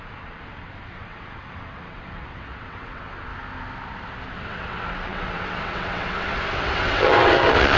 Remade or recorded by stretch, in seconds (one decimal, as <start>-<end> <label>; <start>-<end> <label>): 0.0-3.3 remade; 3.3-4.3 recorded; 4.3-7.8 remade